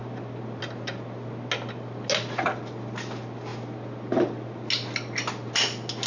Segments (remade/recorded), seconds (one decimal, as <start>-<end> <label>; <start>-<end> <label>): 0.0-6.1 recorded